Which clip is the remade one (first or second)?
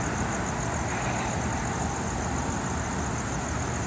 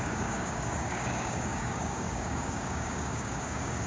second